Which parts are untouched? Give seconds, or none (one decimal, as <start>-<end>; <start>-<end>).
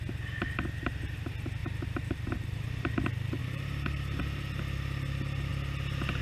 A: 0.0-1.6; 2.6-3.4; 4.2-6.2